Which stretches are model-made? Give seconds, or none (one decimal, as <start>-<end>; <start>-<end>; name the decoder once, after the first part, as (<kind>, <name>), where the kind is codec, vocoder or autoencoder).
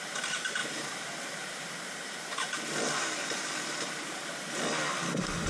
none